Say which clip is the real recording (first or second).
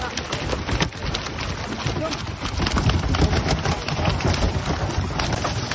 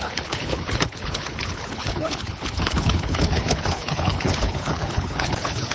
first